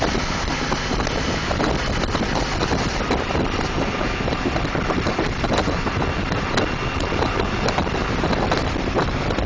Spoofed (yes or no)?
no